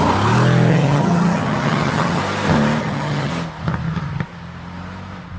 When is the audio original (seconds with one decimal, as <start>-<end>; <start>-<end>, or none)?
0.0-0.7; 2.2-2.8; 3.3-5.4